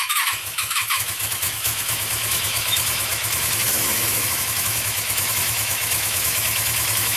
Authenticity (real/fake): fake